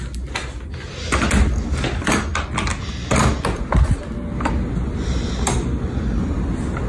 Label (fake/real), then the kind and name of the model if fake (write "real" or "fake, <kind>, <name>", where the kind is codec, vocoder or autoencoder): real